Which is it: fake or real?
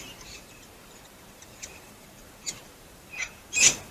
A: fake